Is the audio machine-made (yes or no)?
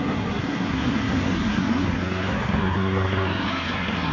yes